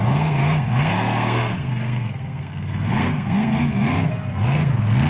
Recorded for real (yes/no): no